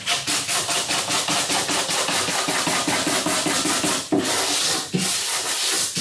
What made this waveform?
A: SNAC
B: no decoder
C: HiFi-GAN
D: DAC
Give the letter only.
B